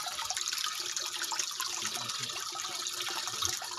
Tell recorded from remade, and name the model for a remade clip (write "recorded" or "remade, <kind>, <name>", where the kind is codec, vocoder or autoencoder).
recorded